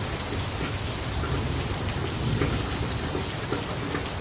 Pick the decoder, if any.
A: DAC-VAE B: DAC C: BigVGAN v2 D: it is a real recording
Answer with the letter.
C